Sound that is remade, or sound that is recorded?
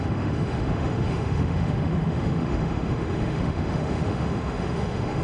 remade